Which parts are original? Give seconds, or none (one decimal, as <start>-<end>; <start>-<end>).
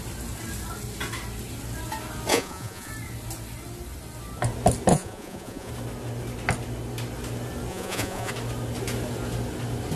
0.0-2.3; 2.9-4.9; 5.7-7.7; 8.3-10.0